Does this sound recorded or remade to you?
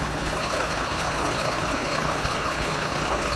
remade